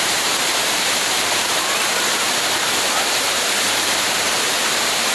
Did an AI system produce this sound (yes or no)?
yes